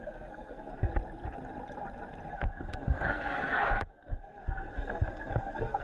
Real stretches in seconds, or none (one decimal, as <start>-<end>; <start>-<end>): 0.9-2.3